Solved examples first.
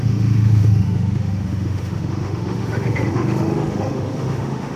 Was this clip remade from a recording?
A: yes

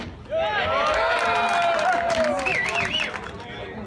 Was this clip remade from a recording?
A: no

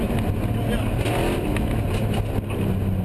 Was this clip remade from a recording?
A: no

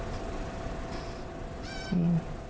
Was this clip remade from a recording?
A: no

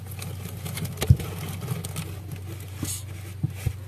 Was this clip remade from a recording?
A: no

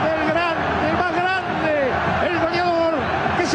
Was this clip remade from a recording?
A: no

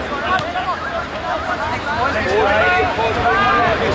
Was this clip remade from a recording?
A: no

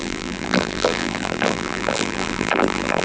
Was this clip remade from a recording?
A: yes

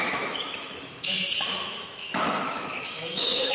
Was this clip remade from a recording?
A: yes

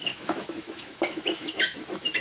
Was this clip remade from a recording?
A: yes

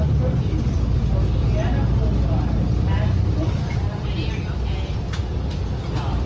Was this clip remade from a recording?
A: no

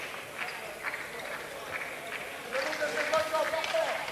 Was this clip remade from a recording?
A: no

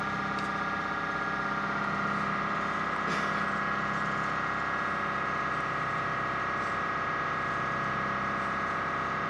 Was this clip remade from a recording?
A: no